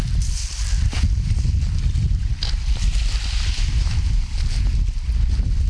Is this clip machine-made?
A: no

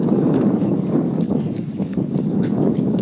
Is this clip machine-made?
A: yes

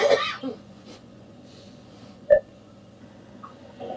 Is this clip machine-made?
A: yes